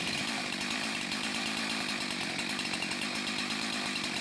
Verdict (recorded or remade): remade